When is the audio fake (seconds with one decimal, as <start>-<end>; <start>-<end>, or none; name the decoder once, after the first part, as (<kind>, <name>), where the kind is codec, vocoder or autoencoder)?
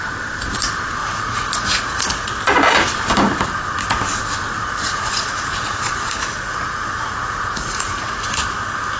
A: 1.0-2.4 (vocoder, Vocos); 4.6-8.3